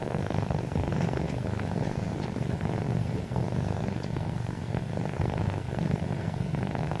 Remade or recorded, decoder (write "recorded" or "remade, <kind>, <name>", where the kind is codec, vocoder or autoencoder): remade, codec, SNAC